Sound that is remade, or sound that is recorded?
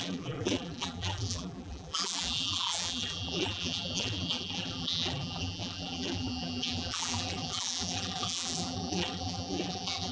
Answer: remade